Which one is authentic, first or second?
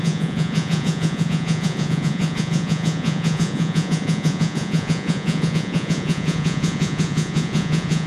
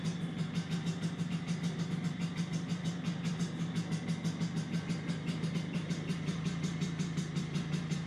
second